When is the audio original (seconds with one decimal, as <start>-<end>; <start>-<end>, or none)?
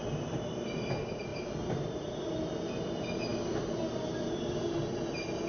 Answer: 0.0-5.5